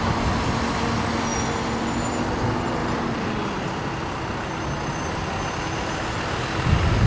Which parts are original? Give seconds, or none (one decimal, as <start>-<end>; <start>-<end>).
0.0-7.1